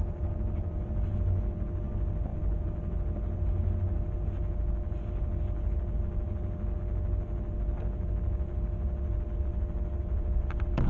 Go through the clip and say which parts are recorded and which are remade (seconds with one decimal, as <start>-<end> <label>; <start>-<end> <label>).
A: 0.0-10.9 recorded